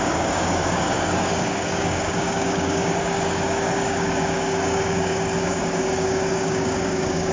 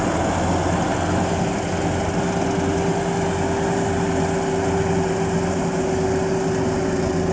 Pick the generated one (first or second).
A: first